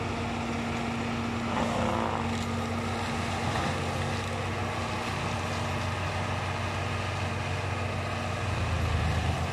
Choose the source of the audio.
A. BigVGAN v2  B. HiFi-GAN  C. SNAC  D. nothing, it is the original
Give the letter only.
D